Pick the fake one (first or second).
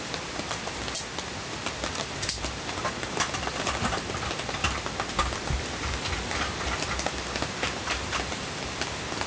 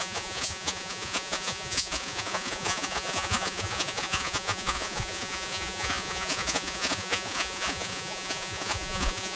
second